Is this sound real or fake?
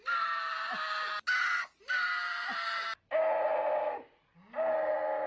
real